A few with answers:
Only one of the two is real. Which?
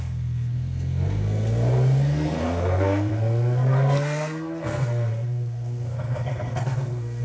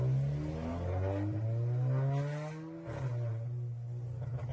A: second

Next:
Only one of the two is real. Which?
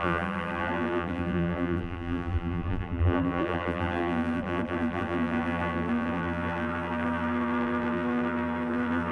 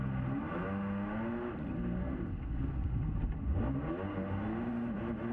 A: second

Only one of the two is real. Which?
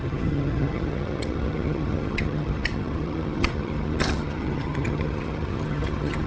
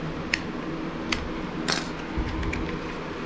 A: second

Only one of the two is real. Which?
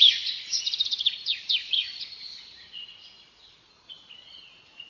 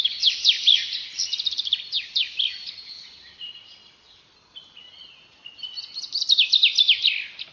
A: second